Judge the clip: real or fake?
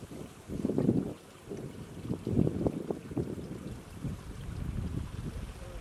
fake